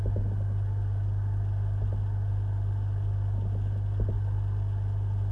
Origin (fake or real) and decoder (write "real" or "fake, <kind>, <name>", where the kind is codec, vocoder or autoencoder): real